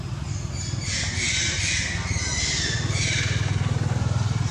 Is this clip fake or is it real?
real